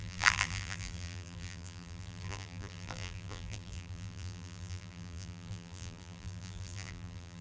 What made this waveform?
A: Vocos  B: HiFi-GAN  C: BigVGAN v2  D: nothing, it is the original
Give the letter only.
C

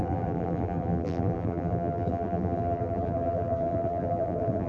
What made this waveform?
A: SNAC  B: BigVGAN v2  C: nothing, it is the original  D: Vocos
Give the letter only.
B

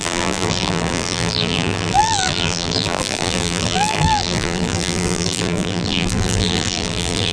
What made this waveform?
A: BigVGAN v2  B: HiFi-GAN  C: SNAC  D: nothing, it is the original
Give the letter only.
A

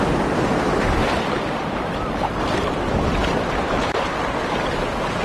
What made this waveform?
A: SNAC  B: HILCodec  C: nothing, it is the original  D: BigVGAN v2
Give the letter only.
D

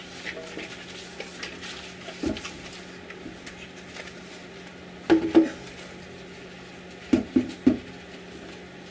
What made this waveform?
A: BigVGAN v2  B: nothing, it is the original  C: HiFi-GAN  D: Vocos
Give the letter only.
B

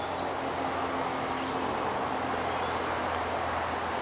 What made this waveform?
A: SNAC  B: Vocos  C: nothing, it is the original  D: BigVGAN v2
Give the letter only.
C